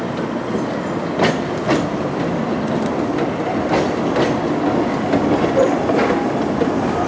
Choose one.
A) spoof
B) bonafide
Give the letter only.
B